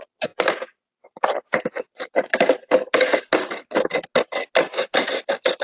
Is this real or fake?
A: real